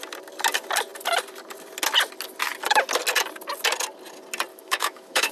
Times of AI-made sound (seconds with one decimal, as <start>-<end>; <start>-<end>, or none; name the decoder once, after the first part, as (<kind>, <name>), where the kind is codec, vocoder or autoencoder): 4.5-5.3 (autoencoder, DAC-VAE)